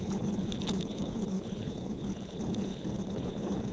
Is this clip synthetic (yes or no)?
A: yes